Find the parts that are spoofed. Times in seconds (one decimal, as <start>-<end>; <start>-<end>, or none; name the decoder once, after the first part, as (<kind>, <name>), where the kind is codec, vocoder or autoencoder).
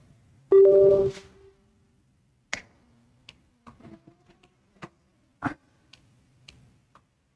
none